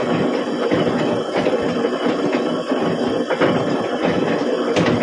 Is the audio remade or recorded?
recorded